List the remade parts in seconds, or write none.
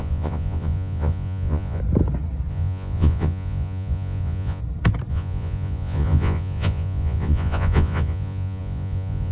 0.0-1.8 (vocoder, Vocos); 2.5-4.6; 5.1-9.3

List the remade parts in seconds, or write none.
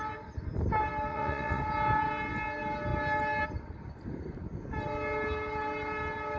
1.1-1.6 (vocoder, Vocos)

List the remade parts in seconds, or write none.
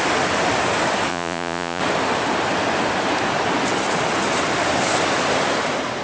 1.1-1.8 (vocoder, Vocos)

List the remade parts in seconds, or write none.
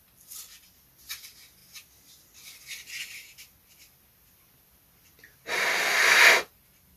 none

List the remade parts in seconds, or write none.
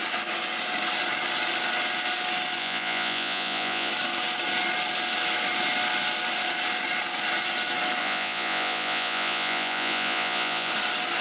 2.6-3.9 (vocoder, Vocos); 8.0-10.7